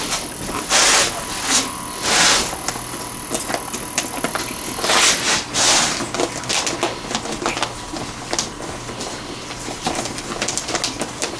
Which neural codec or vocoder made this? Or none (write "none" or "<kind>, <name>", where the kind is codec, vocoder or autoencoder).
none